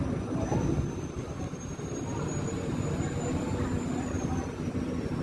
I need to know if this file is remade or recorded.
recorded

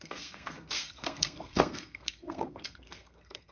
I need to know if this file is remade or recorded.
remade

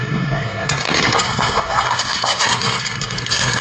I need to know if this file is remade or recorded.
remade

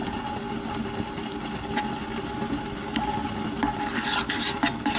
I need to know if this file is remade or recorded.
recorded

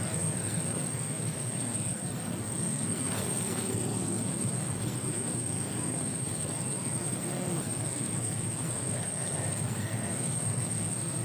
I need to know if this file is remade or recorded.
remade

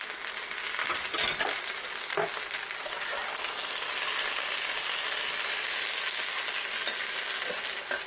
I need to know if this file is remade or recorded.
recorded